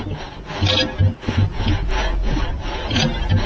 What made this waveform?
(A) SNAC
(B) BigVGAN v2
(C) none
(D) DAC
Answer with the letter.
C